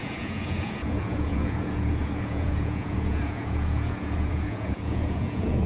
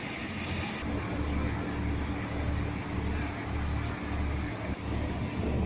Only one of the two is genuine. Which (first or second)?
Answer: second